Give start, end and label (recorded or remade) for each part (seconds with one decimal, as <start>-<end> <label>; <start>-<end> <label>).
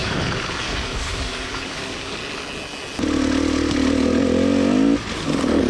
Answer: 0.0-2.2 remade; 2.2-5.7 recorded